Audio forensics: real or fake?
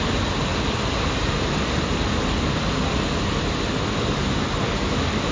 real